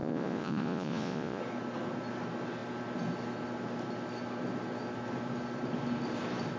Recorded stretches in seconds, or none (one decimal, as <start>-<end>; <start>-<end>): 1.4-6.6